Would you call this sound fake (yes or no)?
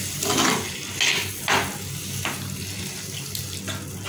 no